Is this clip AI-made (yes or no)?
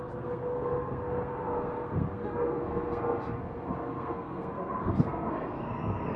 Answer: yes